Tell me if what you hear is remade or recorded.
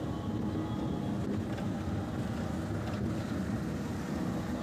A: recorded